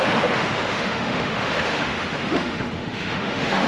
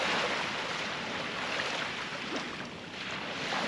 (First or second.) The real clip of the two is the second